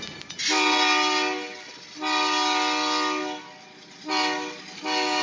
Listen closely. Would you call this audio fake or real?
real